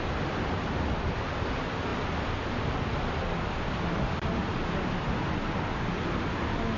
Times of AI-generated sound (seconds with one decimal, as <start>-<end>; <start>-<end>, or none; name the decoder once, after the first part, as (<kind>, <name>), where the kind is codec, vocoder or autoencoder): none